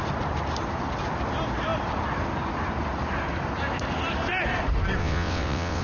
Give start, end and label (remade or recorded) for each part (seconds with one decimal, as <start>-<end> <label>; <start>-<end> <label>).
0.0-5.0 recorded; 5.0-5.8 remade